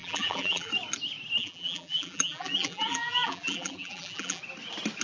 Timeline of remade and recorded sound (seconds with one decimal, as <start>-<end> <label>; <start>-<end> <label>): 0.0-0.7 remade; 0.7-1.4 recorded; 1.4-4.4 remade; 4.4-5.0 recorded